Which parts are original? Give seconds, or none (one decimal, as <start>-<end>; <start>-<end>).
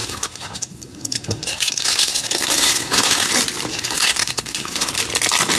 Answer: 3.3-3.7; 4.9-5.6